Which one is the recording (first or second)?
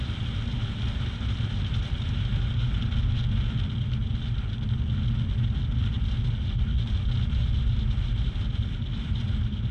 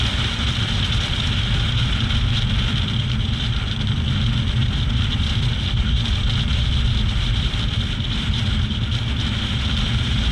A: first